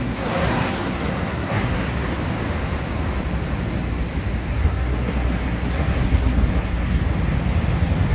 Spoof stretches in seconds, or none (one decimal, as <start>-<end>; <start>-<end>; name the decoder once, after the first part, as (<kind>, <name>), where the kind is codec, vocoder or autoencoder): 0.0-2.2 (codec, SNAC); 4.5-7.0